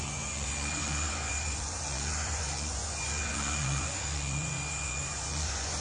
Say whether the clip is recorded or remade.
remade